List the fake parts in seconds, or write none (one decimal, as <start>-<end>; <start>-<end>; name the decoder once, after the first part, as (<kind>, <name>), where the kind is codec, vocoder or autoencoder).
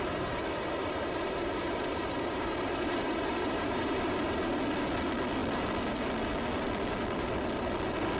0.8-4.5 (vocoder, BigVGAN v2)